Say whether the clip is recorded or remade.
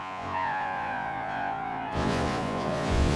remade